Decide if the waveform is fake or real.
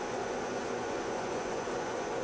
fake